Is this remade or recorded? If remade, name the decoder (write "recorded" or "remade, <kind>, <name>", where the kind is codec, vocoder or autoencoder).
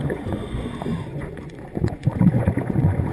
remade, vocoder, Vocos